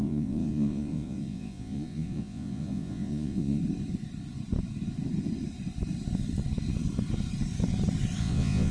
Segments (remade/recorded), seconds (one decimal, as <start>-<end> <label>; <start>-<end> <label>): 0.0-3.6 remade; 3.6-8.2 recorded; 8.2-8.7 remade